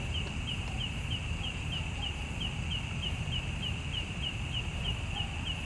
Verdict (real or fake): fake